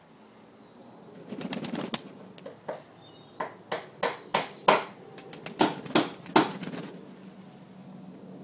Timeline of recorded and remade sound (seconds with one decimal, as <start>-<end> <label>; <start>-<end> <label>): 0.0-0.8 recorded; 0.8-1.7 remade; 1.7-8.4 recorded